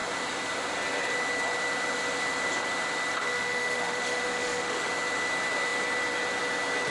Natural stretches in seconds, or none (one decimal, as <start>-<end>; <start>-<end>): 0.0-3.2; 4.9-6.9